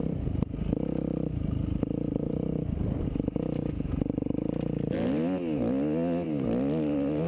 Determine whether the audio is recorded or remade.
recorded